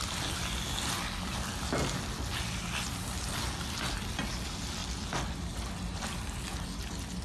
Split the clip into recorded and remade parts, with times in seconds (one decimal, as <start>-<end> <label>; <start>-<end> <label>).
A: 0.0-7.2 recorded